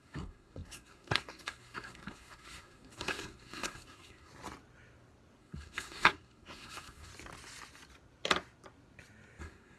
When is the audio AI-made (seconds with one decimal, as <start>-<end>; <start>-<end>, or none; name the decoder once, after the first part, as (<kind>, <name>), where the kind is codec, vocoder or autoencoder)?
0.0-4.3 (codec, SNAC); 5.4-7.1; 9.4-9.8